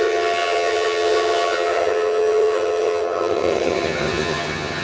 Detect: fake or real fake